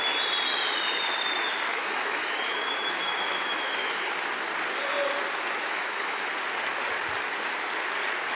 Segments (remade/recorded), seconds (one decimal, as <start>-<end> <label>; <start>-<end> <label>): 0.0-1.7 recorded; 1.7-4.1 remade; 4.1-5.6 recorded; 5.6-6.3 remade; 6.3-8.4 recorded